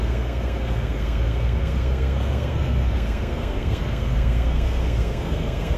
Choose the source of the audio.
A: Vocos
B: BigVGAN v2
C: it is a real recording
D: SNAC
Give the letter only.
D